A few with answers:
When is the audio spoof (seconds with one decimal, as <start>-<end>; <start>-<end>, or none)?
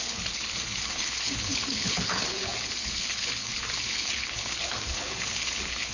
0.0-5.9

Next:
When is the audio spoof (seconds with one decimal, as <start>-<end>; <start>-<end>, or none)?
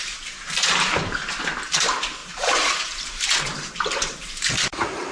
0.0-5.1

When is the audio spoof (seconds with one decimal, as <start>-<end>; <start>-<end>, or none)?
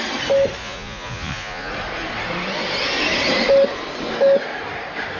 0.6-1.7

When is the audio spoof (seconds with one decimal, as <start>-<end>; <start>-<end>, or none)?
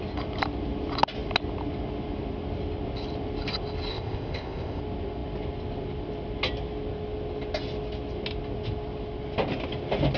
3.9-4.8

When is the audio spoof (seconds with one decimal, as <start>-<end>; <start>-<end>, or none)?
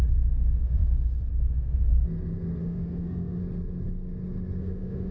0.0-1.9; 2.6-3.4; 4.6-5.1